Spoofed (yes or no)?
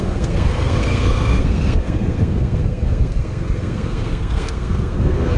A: yes